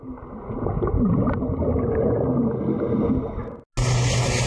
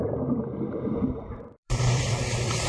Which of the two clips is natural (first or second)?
first